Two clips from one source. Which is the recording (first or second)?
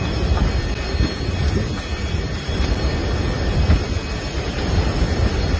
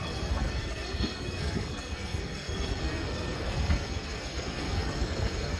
first